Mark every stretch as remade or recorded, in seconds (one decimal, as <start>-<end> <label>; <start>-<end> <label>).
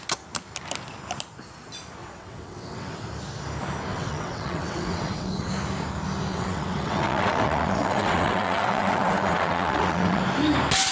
0.0-2.0 recorded; 2.0-3.0 remade; 3.0-3.9 recorded; 3.9-5.5 remade; 5.5-6.3 recorded; 6.3-10.2 remade; 10.2-10.9 recorded